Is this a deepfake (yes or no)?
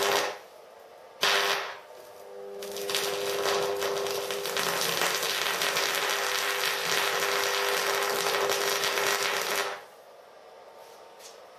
no